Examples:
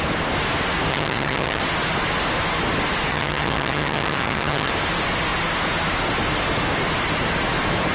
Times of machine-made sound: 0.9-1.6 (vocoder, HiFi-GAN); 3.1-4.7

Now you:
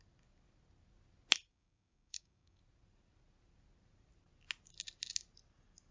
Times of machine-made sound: 1.5-2.6 (codec, DAC)